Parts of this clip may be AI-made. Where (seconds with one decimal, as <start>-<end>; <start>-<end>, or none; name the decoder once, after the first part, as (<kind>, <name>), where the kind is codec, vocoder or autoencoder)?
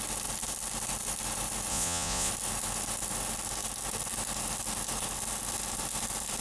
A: 1.7-2.3 (vocoder, Vocos)